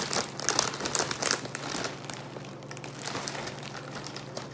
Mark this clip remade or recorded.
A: recorded